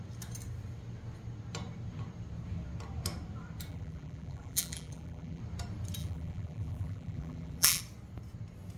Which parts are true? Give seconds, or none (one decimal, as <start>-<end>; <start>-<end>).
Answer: 0.0-3.7; 5.4-6.0; 7.8-8.8